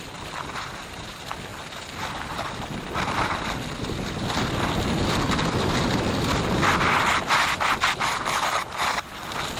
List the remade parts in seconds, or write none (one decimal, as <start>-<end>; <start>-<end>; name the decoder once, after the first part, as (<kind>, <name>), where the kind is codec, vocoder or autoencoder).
none